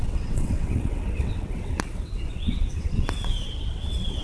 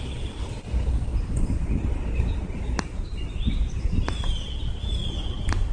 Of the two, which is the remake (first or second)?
first